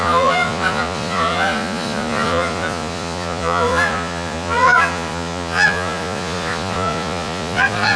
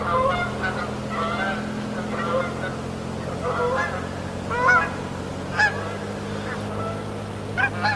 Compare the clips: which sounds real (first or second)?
second